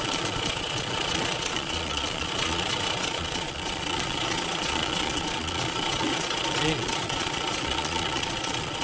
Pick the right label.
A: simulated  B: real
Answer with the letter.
A